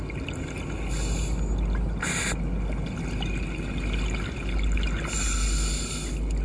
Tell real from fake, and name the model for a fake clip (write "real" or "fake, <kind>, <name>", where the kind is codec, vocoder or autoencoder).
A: real